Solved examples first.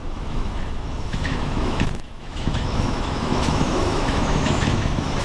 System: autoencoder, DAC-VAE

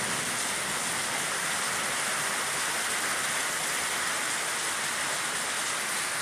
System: none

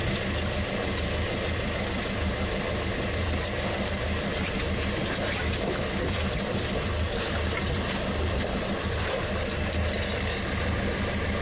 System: vocoder, BigVGAN v2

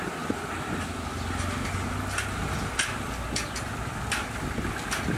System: none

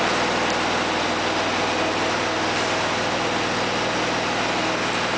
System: none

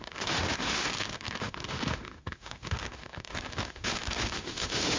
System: autoencoder, DAC-VAE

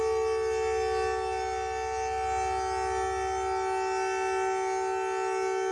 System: none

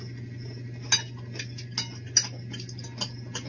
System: none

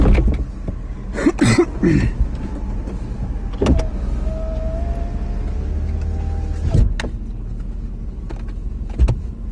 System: none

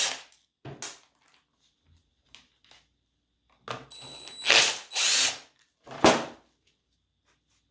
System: none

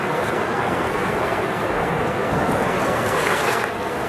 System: codec, SNAC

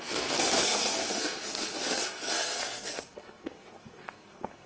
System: codec, SNAC